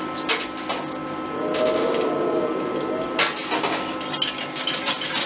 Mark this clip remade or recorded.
recorded